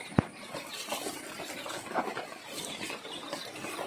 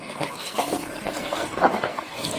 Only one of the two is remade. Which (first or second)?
second